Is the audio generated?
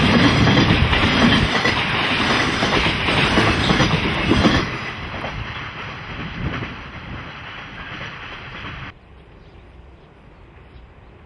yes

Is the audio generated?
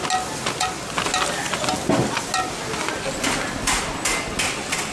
no